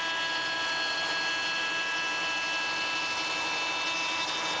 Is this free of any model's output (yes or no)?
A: yes